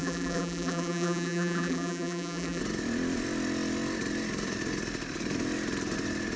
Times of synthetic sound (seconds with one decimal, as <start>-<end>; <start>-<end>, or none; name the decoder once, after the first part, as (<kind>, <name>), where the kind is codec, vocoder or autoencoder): 0.0-2.6 (vocoder, BigVGAN v2)